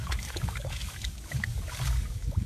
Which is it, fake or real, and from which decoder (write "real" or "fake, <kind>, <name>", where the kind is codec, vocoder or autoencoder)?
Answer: fake, codec, DAC